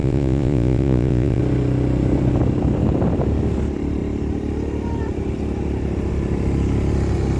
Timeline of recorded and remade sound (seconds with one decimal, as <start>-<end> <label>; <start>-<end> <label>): 0.0-1.4 remade; 1.4-7.4 recorded